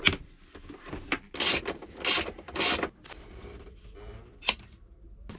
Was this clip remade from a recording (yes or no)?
no